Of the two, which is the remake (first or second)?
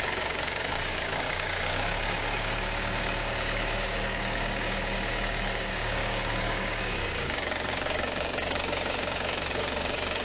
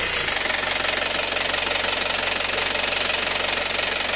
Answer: first